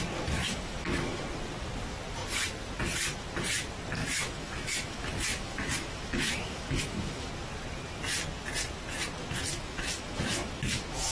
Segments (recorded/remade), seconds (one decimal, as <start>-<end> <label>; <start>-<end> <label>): 0.0-0.4 recorded; 0.4-1.2 remade; 1.2-4.0 recorded; 4.0-7.3 remade; 7.3-9.5 recorded; 9.5-11.1 remade